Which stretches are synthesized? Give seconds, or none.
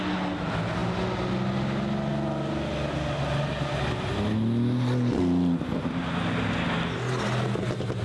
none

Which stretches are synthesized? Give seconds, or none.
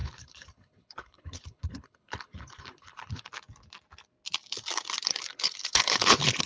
0.0-3.3 (codec, HILCodec); 5.3-6.5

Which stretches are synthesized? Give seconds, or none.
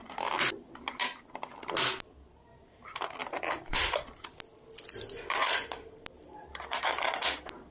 none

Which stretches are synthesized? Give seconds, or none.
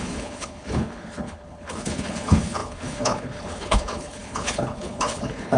0.0-5.6 (codec, HILCodec)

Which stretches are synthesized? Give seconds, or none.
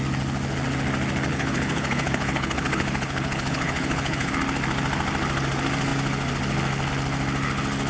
1.3-4.3 (codec, HILCodec)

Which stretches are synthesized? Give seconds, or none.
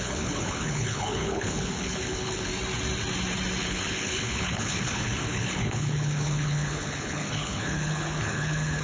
0.0-2.5 (codec, HILCodec); 3.6-8.8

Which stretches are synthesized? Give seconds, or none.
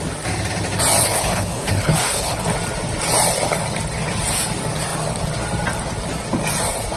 1.0-2.4 (codec, HILCodec)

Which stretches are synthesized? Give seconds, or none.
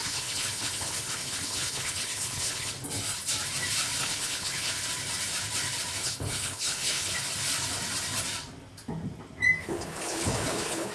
0.0-2.7 (codec, HILCodec); 4.0-4.7; 6.0-7.1; 9.6-10.9